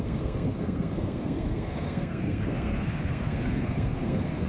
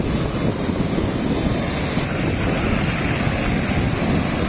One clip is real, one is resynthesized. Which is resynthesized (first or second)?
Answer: first